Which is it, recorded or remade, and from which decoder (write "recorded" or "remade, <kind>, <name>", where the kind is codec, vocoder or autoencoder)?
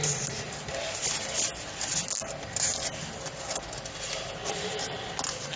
recorded